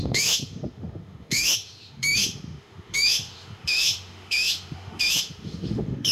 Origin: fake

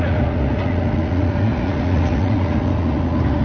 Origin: fake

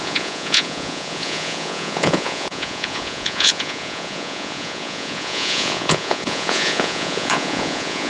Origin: fake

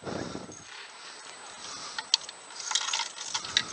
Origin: real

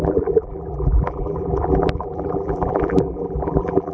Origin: fake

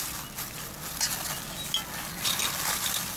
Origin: real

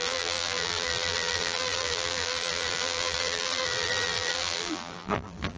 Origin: fake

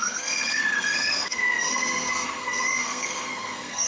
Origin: fake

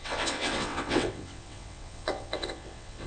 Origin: fake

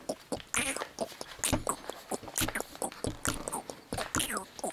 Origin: real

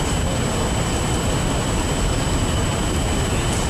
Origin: real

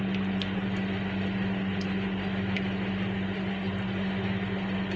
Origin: real